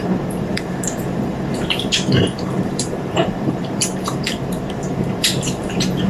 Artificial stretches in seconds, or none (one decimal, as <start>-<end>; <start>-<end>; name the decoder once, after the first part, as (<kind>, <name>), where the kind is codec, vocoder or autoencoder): 0.0-6.1 (vocoder, BigVGAN v2)